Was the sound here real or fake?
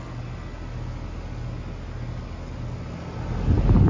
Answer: real